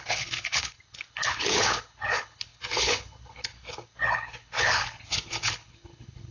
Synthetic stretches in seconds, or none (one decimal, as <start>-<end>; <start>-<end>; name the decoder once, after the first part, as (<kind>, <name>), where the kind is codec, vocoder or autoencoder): 0.0-6.3 (codec, HILCodec)